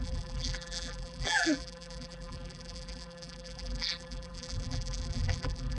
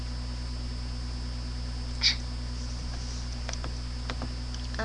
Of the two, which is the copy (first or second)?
first